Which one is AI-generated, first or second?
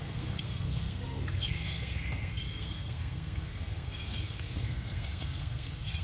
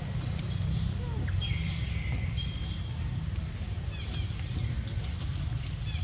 first